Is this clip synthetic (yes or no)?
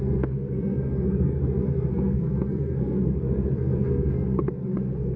yes